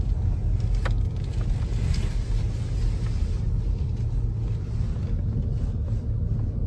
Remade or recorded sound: recorded